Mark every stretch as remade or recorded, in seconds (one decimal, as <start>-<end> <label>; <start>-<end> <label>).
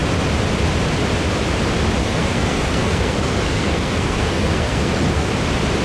0.0-2.0 recorded; 2.0-5.3 remade; 5.3-5.8 recorded